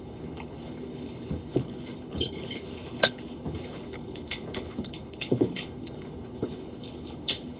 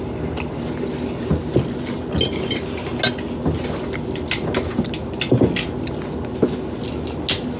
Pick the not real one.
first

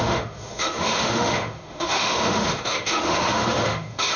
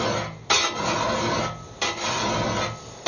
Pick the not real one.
first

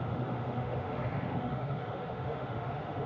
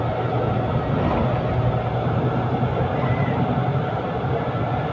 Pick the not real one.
first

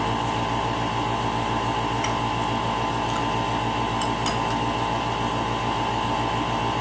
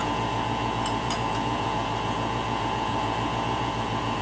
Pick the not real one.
second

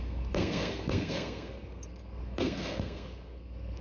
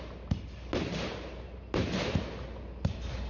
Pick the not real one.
first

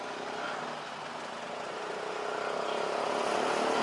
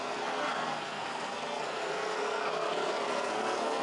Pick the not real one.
second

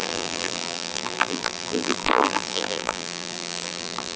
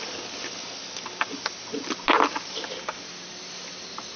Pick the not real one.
first